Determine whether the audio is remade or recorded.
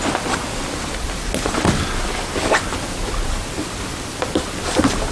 recorded